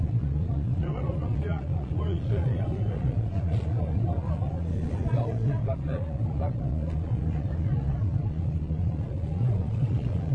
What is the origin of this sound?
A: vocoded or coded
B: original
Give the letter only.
A